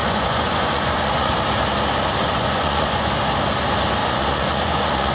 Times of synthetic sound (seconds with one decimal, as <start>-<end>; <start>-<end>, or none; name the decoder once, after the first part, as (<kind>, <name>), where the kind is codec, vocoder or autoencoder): 0.0-1.3 (vocoder, Vocos); 2.2-3.1; 4.0-5.1